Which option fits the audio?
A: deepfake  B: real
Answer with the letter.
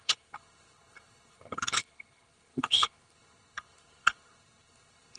A